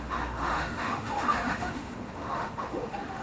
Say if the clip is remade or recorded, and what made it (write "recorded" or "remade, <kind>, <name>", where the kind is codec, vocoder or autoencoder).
remade, autoencoder, DAC-VAE